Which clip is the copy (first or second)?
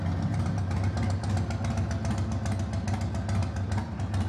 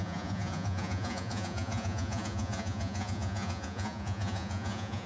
second